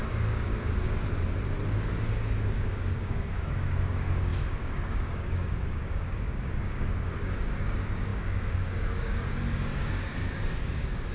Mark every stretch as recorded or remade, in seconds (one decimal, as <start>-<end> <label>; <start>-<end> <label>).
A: 0.0-0.5 remade; 0.5-1.8 recorded; 1.8-11.1 remade